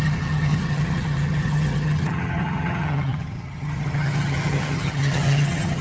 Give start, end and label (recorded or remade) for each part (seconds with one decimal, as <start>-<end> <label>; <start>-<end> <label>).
0.0-5.8 remade